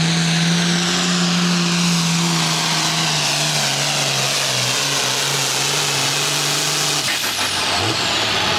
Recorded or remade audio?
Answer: recorded